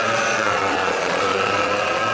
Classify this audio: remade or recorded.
remade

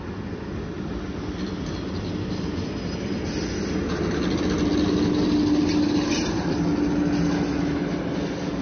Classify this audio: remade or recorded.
recorded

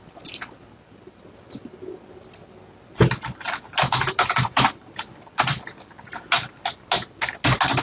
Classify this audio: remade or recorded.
recorded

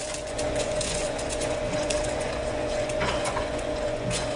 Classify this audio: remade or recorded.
remade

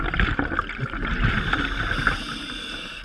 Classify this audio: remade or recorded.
recorded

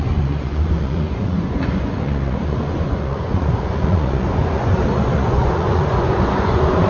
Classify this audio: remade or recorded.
remade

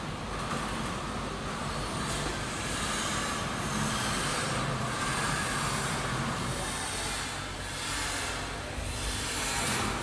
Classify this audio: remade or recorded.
recorded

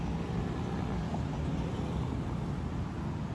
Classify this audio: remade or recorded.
recorded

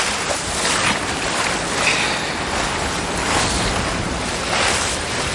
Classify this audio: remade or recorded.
recorded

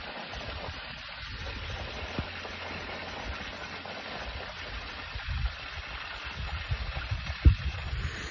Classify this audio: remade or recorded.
recorded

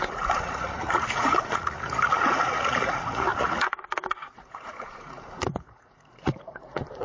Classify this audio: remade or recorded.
remade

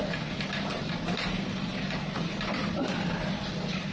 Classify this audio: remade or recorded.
recorded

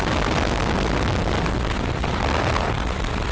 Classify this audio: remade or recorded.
recorded